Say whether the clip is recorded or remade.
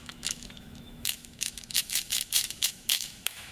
remade